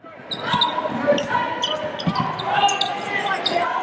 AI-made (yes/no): no